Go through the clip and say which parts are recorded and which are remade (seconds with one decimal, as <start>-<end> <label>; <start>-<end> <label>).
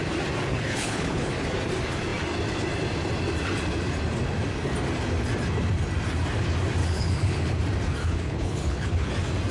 0.0-0.5 recorded; 0.5-1.3 remade; 1.3-6.8 recorded; 6.8-7.6 remade; 7.6-8.0 recorded; 8.0-9.1 remade; 9.1-9.5 recorded